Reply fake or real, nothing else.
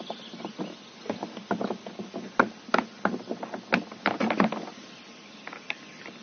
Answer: real